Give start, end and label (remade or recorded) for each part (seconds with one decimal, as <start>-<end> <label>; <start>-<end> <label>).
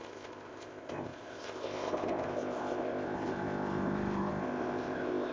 0.0-5.3 remade